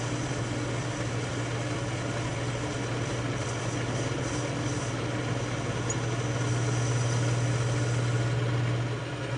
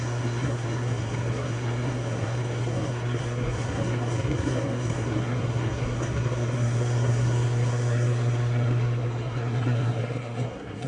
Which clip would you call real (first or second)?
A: first